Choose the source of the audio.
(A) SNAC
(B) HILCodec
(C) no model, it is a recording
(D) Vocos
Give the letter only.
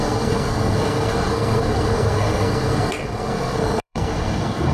A